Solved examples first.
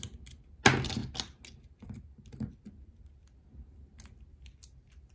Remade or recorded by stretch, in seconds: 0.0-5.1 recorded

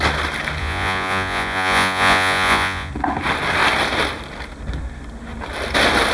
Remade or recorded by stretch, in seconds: 0.0-0.6 recorded; 0.6-2.9 remade; 2.9-6.1 recorded